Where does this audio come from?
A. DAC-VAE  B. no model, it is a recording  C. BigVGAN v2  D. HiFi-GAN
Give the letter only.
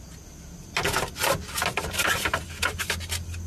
B